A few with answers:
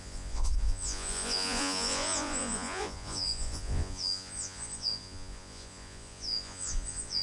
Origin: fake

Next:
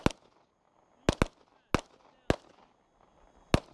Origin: real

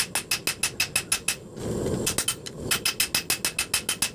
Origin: real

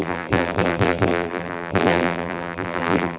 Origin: fake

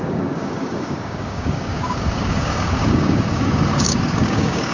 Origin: fake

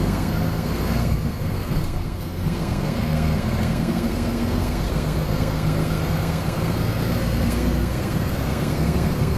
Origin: fake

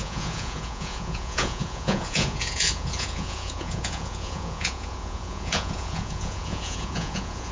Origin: fake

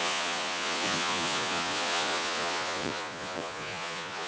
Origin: fake